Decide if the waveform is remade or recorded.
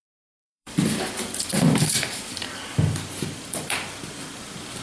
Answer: remade